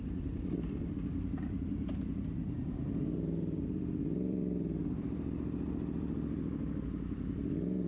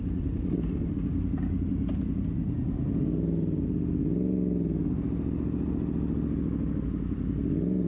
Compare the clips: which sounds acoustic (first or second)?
second